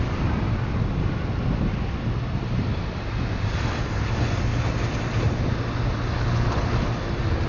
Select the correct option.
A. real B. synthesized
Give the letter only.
A